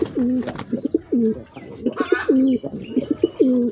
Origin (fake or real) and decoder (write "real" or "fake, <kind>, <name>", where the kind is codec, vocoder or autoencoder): real